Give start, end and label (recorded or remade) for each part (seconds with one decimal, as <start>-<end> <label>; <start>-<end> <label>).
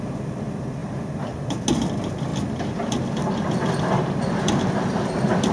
0.0-0.8 recorded; 0.8-1.6 remade; 1.6-2.3 recorded; 2.3-4.8 remade; 4.8-5.5 recorded